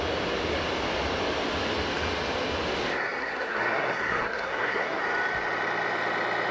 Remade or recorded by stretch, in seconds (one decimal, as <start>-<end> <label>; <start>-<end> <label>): 0.0-3.2 recorded; 3.2-5.0 remade; 5.0-6.5 recorded